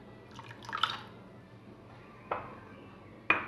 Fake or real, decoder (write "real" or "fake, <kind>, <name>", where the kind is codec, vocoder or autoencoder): real